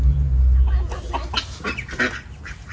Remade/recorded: recorded